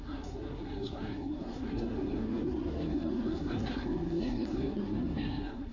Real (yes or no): no